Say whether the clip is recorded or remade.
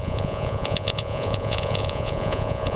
remade